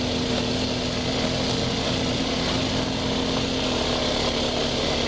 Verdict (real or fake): real